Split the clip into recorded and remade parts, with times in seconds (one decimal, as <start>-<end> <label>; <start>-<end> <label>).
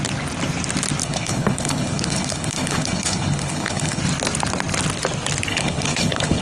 0.0-1.0 recorded; 1.0-4.0 remade; 4.0-5.5 recorded; 5.5-6.4 remade